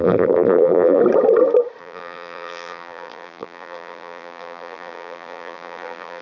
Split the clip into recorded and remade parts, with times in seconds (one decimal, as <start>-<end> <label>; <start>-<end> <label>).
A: 0.0-1.0 remade; 1.0-1.8 recorded; 1.8-6.2 remade